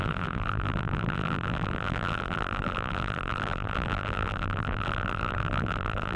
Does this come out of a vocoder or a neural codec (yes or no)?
yes